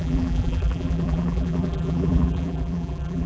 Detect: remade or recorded remade